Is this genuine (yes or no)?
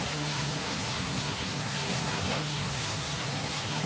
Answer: no